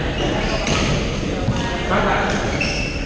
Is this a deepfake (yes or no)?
no